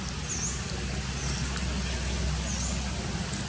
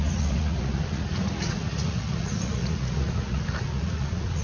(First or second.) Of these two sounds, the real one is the first